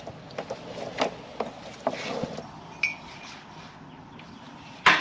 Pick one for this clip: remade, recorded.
recorded